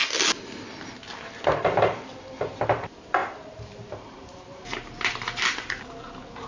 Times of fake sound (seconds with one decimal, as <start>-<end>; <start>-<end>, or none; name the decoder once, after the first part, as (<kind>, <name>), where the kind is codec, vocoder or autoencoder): 1.7-6.5 (vocoder, BigVGAN v2)